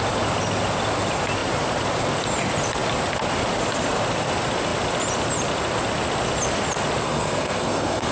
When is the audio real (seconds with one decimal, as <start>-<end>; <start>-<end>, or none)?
0.0-7.0

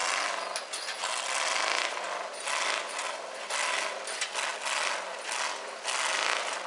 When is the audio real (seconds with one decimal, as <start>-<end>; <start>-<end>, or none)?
0.0-6.7

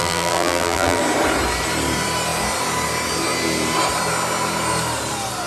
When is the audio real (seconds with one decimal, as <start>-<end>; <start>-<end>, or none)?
1.0-5.5

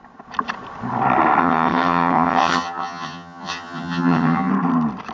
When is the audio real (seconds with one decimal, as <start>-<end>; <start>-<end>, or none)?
0.0-1.4; 4.5-5.1

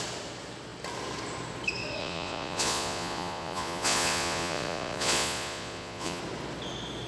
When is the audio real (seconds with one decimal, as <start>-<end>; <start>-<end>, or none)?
0.0-2.0; 6.2-7.1

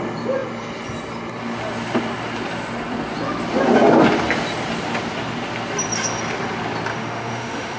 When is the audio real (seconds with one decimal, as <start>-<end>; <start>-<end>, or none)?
0.0-6.9

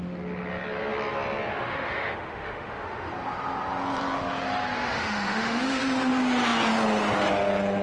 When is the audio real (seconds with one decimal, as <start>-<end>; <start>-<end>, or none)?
0.0-1.5; 3.1-4.8; 5.8-7.8

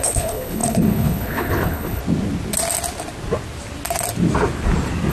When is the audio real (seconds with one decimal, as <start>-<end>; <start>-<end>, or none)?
2.0-5.1